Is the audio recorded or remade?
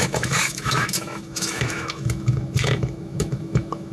remade